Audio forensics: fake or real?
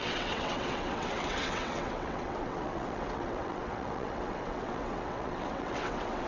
fake